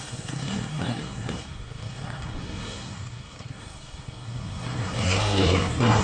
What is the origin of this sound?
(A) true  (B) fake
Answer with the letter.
B